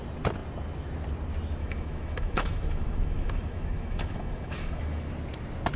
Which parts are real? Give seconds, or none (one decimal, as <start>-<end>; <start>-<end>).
0.0-1.6; 5.1-5.8